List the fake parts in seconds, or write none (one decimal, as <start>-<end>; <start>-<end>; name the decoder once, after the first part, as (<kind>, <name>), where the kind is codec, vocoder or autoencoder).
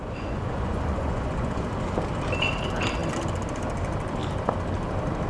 0.0-1.6 (vocoder, Vocos)